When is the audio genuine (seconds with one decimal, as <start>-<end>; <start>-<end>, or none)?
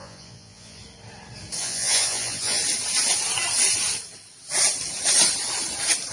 0.8-1.6; 2.6-6.1